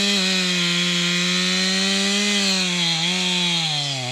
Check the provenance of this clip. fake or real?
real